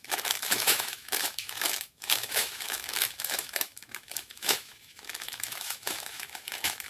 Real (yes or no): no